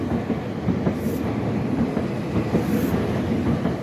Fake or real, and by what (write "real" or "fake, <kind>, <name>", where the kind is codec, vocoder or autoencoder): real